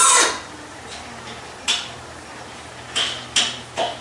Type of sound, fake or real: real